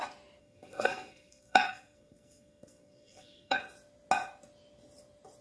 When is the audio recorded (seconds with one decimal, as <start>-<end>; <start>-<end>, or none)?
0.0-0.4; 3.6-5.4